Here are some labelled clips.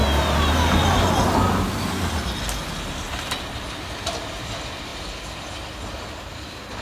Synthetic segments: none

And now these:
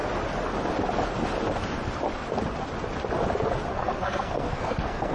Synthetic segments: 3.7-5.1